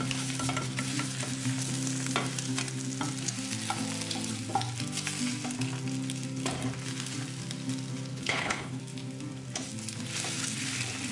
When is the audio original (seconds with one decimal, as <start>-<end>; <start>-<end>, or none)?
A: 0.0-8.1; 8.8-11.1